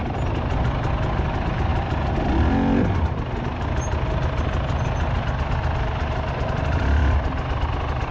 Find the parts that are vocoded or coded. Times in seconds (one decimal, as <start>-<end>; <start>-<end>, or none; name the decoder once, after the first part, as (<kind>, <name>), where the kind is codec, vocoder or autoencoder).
none